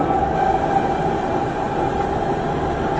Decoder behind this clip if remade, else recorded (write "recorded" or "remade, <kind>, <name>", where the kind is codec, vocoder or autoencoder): recorded